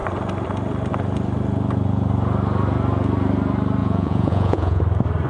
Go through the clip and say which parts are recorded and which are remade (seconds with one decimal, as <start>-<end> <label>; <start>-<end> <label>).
0.0-3.8 recorded; 3.8-4.8 remade; 4.8-5.3 recorded

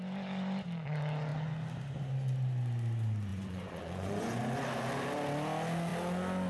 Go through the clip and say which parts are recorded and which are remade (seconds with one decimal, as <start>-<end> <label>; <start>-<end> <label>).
0.0-3.3 recorded; 3.3-4.4 remade; 4.4-6.5 recorded

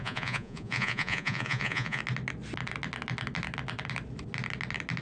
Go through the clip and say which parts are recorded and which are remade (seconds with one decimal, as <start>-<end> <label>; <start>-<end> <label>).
0.0-2.0 remade; 2.0-5.0 recorded

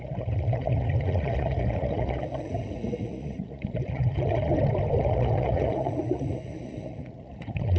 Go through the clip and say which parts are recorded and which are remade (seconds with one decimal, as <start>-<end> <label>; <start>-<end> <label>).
0.0-4.5 remade; 4.5-5.0 recorded; 5.0-7.8 remade

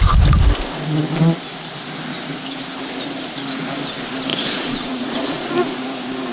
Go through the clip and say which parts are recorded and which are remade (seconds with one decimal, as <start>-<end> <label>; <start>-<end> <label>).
0.0-4.3 recorded; 4.3-5.5 remade; 5.5-6.3 recorded

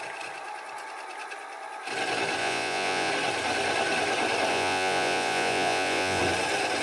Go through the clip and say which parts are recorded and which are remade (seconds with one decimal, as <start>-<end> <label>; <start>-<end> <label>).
0.0-2.4 recorded; 2.4-3.1 remade; 3.1-4.5 recorded; 4.5-6.2 remade; 6.2-6.8 recorded

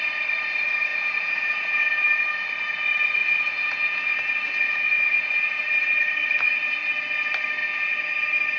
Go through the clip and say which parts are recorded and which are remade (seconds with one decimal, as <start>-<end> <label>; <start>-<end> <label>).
0.0-0.9 recorded; 0.9-2.2 remade; 2.2-3.2 recorded; 3.2-5.6 remade; 5.6-7.6 recorded; 7.6-8.1 remade; 8.1-8.6 recorded

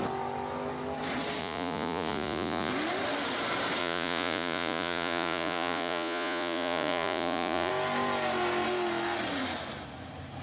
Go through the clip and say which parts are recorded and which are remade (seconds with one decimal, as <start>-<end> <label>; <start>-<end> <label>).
0.0-1.4 recorded; 1.4-2.7 remade; 2.7-3.8 recorded; 3.8-7.7 remade; 7.7-10.4 recorded